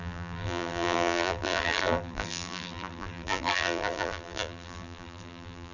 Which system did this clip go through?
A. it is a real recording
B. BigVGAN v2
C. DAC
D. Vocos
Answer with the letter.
B